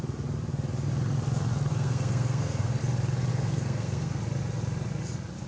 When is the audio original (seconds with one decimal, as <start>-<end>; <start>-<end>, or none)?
0.0-1.7; 2.8-3.3; 4.2-5.5